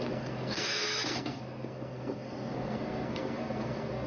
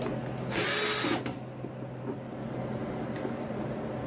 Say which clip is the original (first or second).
second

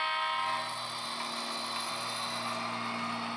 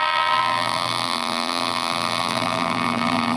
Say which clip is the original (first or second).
first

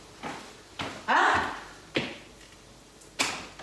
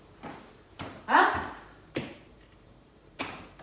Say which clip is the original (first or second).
first